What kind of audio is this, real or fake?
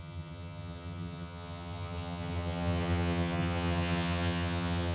fake